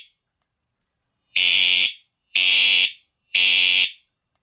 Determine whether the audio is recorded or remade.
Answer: remade